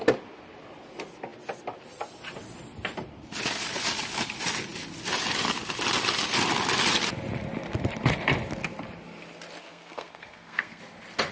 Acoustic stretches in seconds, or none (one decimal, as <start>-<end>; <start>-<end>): 0.0-9.6; 10.8-11.3